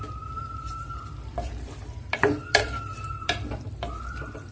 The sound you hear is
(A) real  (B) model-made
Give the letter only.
B